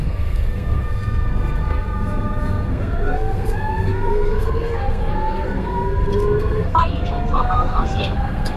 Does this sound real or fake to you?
fake